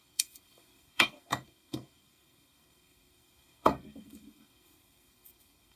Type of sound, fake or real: fake